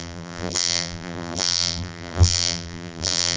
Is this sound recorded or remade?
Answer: remade